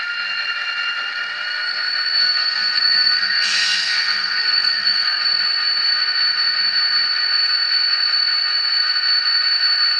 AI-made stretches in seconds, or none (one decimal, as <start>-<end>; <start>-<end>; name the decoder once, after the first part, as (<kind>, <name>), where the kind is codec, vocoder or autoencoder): 2.2-5.2 (codec, SNAC)